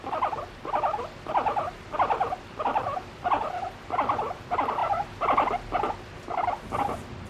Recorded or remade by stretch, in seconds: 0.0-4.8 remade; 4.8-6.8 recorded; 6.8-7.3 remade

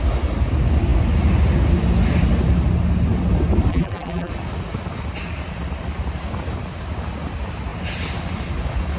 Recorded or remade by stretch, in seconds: 0.0-3.7 recorded; 3.7-4.3 remade; 4.3-9.0 recorded

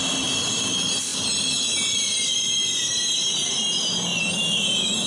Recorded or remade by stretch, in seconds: 0.0-5.1 recorded

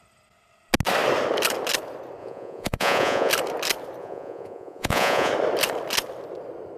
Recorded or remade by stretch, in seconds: 0.0-2.2 recorded; 2.2-3.3 remade; 3.3-4.0 recorded; 4.0-5.3 remade; 5.3-6.8 recorded

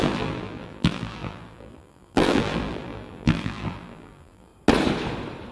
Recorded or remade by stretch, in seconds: 0.0-4.5 remade; 4.5-5.5 recorded

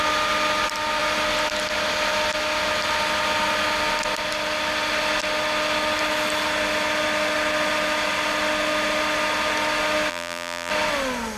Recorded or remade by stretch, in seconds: 0.0-10.1 recorded; 10.1-10.7 remade; 10.7-11.4 recorded

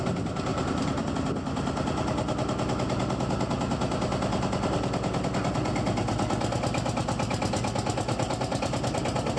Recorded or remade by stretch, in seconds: 0.0-0.5 recorded; 0.5-1.1 remade; 1.1-9.4 recorded